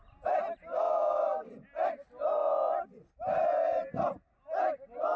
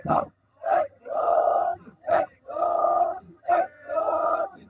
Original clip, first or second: first